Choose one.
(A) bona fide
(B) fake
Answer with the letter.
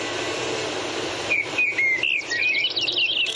A